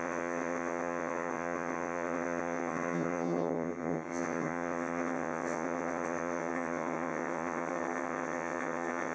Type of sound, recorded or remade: remade